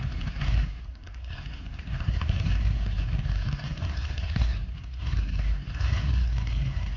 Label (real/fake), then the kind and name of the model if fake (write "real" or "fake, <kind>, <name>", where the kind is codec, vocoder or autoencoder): fake, codec, SNAC